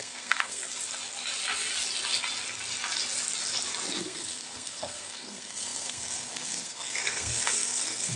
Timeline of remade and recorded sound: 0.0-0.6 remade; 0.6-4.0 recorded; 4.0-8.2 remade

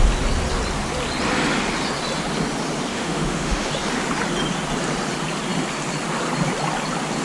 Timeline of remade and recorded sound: 0.0-2.9 recorded; 2.9-3.7 remade; 3.7-7.2 recorded

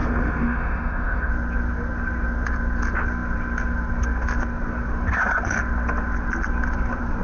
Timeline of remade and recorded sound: 0.0-1.3 remade; 1.3-7.2 recorded

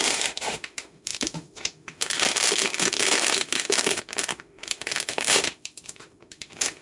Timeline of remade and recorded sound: 0.0-6.8 remade

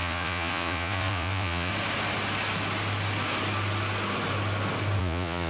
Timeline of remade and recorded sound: 0.0-1.7 remade; 1.7-5.0 recorded; 5.0-5.5 remade